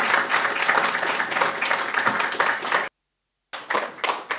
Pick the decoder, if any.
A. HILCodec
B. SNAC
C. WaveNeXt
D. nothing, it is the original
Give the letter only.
D